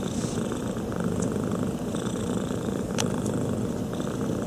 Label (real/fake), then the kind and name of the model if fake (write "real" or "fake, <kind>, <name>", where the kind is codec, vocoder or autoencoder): real